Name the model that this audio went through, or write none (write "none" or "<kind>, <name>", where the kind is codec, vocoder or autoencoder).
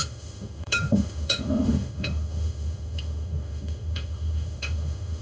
autoencoder, DAC-VAE